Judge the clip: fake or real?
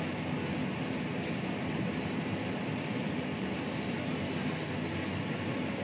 real